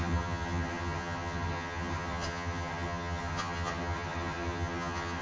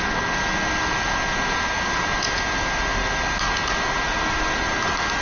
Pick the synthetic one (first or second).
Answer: first